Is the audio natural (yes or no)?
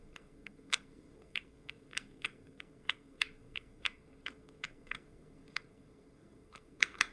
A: no